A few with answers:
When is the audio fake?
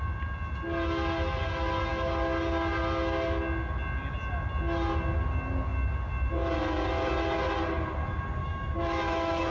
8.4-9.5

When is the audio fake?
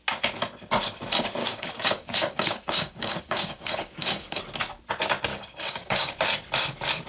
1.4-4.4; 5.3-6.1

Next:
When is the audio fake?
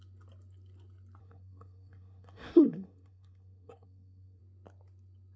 1.2-4.4